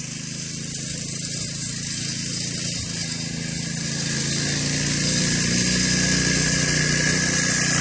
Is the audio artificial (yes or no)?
no